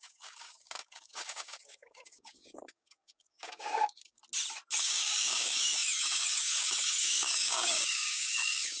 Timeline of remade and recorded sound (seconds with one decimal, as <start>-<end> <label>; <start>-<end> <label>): 0.0-4.2 remade; 4.2-4.8 recorded; 4.8-8.8 remade